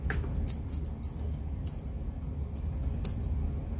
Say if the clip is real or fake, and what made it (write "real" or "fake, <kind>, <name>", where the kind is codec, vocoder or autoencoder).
real